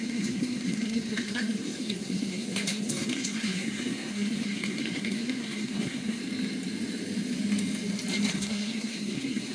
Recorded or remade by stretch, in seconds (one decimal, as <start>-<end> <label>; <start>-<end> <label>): 0.0-6.2 remade; 6.2-8.3 recorded; 8.3-9.5 remade